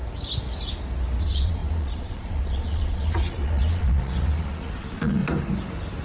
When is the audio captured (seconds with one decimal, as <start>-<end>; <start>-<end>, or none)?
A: 0.0-1.2; 5.2-6.0